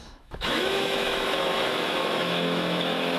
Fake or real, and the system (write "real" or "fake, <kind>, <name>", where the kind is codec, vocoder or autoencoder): fake, autoencoder, DAC-VAE